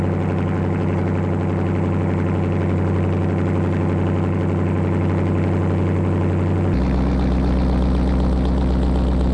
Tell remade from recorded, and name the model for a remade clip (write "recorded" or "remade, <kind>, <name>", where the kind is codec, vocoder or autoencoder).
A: recorded